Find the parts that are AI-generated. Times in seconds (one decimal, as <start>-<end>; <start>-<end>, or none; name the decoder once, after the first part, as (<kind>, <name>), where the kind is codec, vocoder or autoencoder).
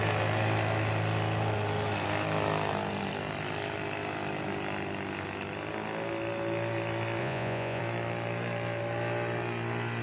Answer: 7.2-7.8 (vocoder, Vocos)